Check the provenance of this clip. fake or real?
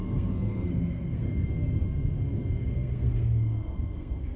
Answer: fake